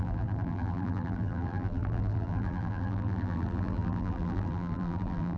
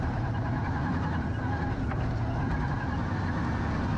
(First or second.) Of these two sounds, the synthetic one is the first